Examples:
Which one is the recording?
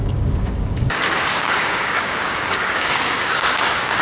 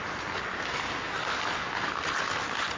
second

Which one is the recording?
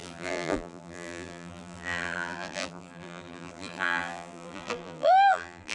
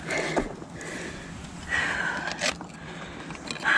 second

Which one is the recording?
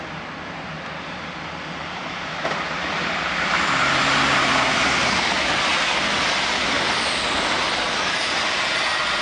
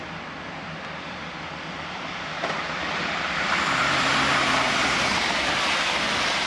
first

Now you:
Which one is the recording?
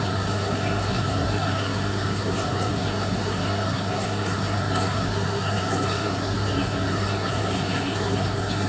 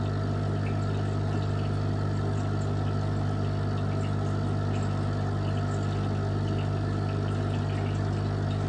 second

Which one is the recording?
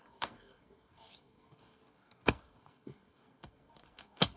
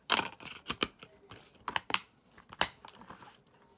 second